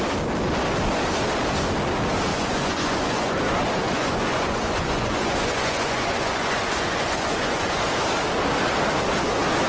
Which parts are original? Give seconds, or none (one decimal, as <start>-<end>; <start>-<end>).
0.0-2.3; 3.4-3.8; 7.8-9.7